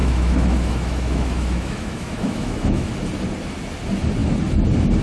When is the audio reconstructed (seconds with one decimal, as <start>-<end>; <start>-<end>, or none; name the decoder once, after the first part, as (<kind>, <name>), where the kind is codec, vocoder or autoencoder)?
0.0-2.9 (autoencoder, DAC-VAE)